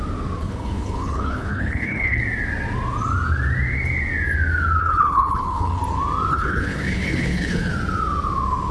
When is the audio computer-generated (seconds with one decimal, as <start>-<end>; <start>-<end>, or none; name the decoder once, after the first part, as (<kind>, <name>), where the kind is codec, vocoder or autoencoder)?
0.4-2.2 (codec, HILCodec); 4.8-5.8; 6.3-7.7